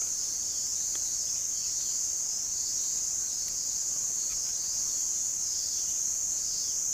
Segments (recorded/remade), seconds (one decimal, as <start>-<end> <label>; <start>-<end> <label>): 0.0-6.9 recorded

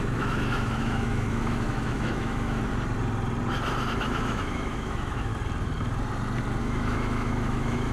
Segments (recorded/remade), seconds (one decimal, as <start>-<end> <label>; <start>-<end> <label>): 0.0-2.6 remade; 2.6-4.0 recorded; 4.0-5.3 remade; 5.3-6.6 recorded; 6.6-7.9 remade

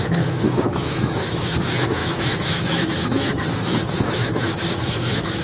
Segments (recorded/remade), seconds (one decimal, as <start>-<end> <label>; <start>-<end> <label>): 0.0-5.4 remade

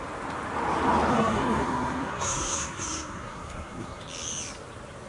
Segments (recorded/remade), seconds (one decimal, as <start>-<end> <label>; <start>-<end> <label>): 0.0-1.1 recorded; 1.1-4.0 remade; 4.0-5.1 recorded

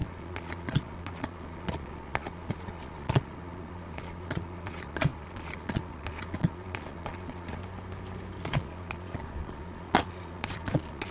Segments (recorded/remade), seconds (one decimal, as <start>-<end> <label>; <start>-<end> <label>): 0.0-7.6 remade; 7.6-8.4 recorded; 8.4-11.1 remade

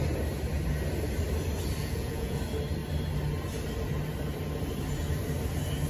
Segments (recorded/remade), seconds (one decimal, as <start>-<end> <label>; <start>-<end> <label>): 0.0-1.8 recorded; 1.8-2.4 remade; 2.4-5.9 recorded

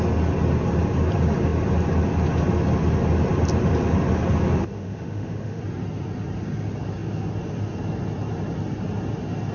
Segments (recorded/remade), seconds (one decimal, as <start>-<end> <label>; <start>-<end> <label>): 0.0-4.6 recorded; 4.6-5.6 remade; 5.6-9.5 recorded